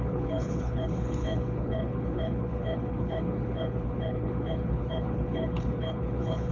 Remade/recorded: remade